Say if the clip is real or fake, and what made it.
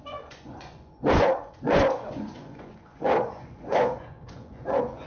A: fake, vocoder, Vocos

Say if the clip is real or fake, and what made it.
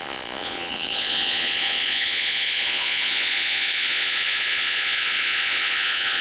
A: fake, vocoder, Vocos